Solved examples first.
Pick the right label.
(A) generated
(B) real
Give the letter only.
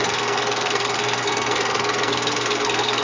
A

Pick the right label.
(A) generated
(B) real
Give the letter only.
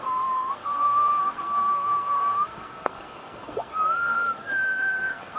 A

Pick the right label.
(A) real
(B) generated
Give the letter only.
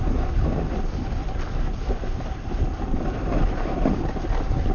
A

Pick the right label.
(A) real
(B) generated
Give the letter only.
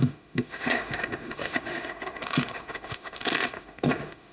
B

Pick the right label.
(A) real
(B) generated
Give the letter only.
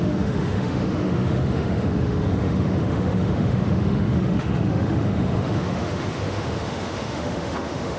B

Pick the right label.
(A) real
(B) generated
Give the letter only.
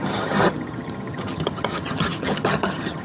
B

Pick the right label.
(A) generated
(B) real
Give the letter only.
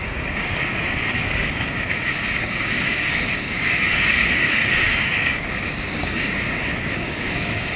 A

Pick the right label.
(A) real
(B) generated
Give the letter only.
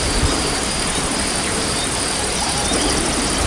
B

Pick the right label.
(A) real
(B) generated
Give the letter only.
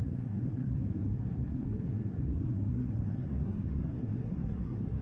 B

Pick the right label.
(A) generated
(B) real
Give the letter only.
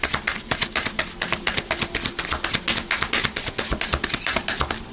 B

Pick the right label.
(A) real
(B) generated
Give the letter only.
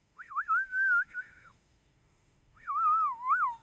B